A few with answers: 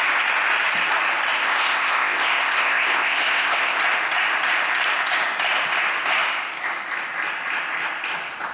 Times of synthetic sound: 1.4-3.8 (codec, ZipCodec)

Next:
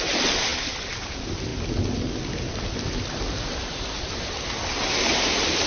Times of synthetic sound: none

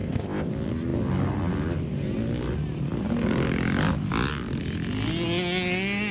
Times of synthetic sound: 0.0-0.5 (codec, ZipCodec)

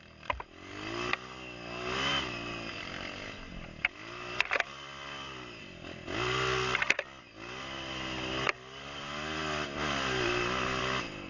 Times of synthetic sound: none

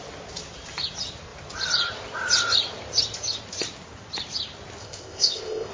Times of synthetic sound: 4.8-5.7 (codec, ZipCodec)

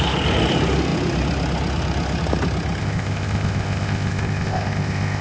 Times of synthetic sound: 2.8-5.2 (codec, ZipCodec)

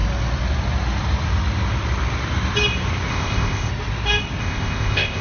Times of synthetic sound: 3.1-3.7 (codec, ZipCodec); 4.4-5.2

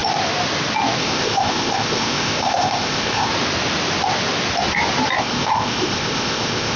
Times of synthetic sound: 1.0-3.3 (codec, ZipCodec); 5.2-6.8